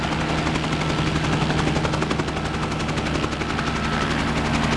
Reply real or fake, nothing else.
real